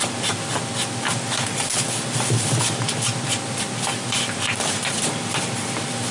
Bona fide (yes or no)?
yes